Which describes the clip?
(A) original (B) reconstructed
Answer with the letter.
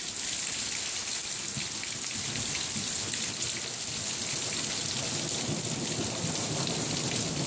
A